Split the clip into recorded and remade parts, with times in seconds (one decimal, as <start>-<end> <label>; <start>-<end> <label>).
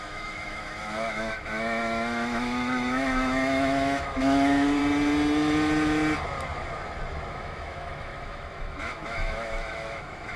0.0-4.8 remade; 4.8-7.3 recorded; 7.3-10.4 remade